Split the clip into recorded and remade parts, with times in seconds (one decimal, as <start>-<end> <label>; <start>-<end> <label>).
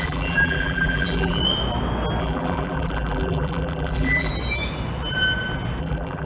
0.0-1.4 remade; 1.4-2.2 recorded; 2.2-4.3 remade; 4.3-5.8 recorded; 5.8-6.2 remade